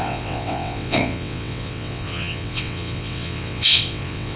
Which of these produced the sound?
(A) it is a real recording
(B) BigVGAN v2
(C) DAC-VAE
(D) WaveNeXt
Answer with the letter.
D